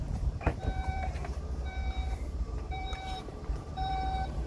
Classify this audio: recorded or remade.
remade